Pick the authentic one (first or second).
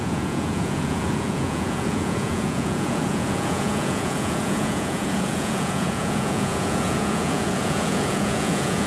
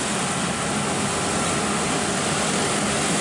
second